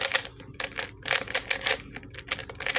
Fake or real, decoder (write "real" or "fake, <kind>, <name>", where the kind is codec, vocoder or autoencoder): real